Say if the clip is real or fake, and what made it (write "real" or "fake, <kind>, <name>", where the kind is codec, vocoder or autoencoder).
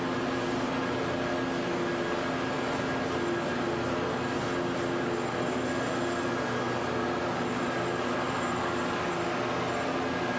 real